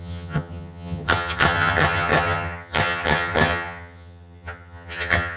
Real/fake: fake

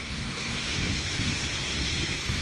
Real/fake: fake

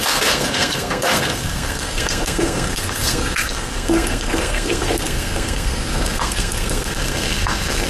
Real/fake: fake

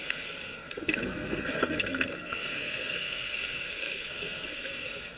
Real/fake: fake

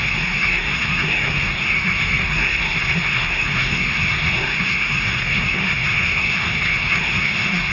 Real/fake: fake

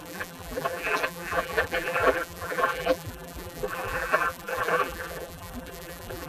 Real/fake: fake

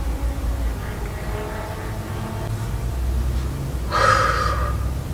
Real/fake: real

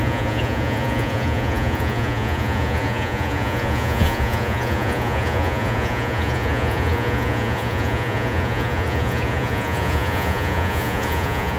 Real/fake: fake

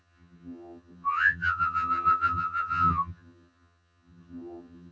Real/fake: fake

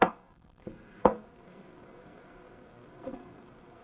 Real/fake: fake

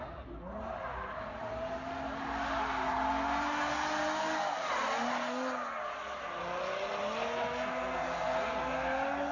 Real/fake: real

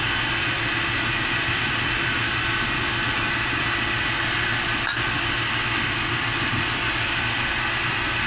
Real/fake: real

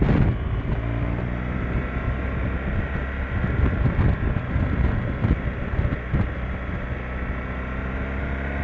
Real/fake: real